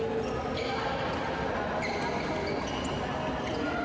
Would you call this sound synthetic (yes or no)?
no